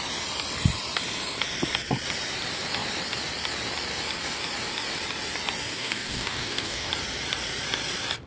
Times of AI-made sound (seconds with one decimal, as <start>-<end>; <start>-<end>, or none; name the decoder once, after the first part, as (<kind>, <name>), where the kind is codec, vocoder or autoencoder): 5.7-6.9 (codec, DAC)